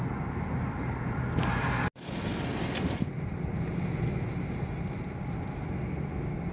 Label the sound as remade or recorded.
recorded